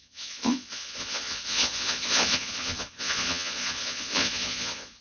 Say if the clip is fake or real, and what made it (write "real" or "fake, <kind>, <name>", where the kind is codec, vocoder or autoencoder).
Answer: fake, vocoder, Vocos